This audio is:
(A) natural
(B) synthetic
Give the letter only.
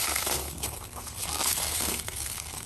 B